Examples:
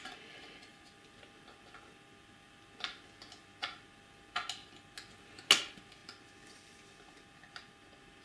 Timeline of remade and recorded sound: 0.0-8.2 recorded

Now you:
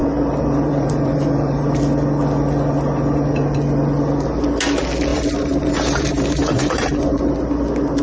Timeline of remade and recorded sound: 0.0-1.8 remade; 1.8-5.1 recorded; 5.1-7.3 remade; 7.3-8.0 recorded

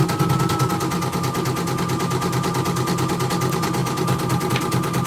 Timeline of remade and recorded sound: 0.0-5.1 recorded

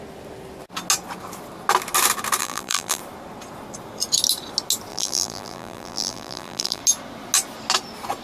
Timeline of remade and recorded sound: 0.0-2.4 recorded; 2.4-3.0 remade; 3.0-4.9 recorded; 4.9-6.8 remade; 6.8-8.2 recorded

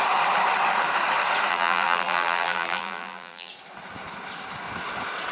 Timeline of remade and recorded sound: 0.0-1.5 recorded; 1.5-3.5 remade; 3.5-5.3 recorded

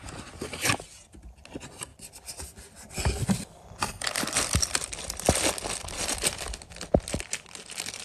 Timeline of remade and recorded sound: 0.0-8.0 recorded